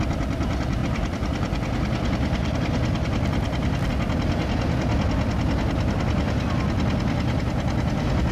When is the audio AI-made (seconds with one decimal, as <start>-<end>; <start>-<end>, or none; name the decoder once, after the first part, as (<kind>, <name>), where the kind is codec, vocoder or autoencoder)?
0.8-3.9 (vocoder, BigVGAN v2)